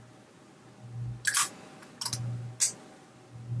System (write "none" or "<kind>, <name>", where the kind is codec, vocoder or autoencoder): none